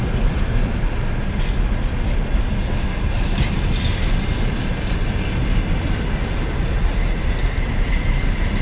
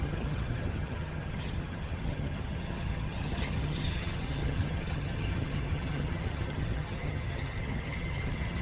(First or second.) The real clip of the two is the first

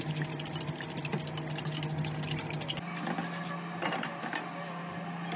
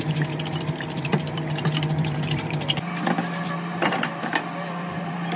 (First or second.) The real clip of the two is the first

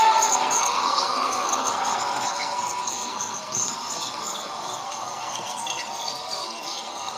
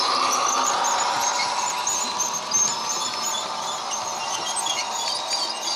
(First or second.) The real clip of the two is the second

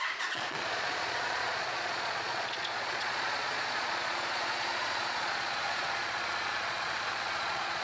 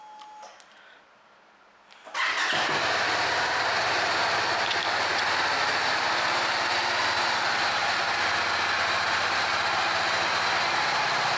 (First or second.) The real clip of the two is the second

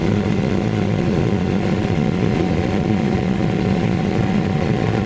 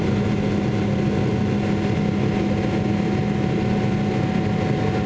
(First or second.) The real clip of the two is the second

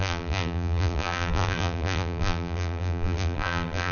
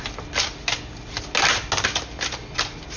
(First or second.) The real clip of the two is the second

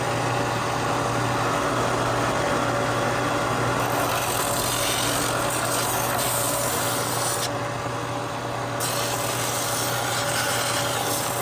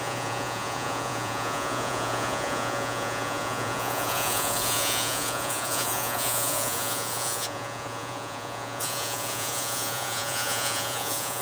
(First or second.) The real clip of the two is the first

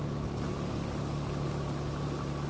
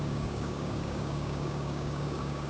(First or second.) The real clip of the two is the first